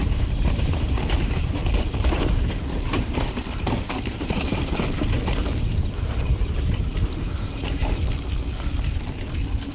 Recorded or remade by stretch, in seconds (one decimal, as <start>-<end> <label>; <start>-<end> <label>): 0.0-4.6 remade; 4.6-5.4 recorded; 5.4-8.0 remade; 8.0-9.7 recorded